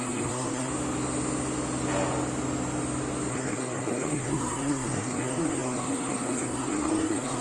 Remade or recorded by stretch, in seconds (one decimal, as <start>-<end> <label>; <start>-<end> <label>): 0.0-0.7 remade; 0.7-3.3 recorded; 3.3-7.4 remade